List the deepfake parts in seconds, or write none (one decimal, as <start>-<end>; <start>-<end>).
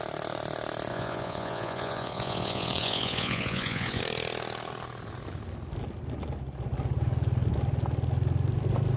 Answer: 0.9-4.0